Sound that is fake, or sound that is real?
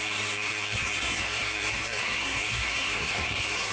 fake